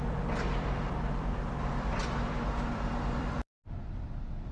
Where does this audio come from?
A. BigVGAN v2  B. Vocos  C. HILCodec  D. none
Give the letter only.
A